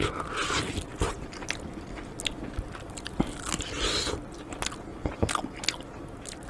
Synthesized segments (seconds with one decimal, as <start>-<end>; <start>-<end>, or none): none